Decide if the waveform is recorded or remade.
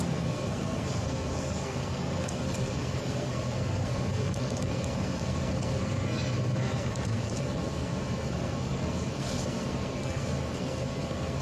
remade